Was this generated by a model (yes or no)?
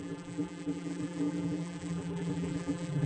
yes